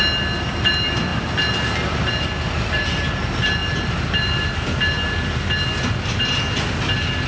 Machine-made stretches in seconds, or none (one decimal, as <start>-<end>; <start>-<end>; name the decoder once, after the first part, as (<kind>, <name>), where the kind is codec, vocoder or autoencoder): none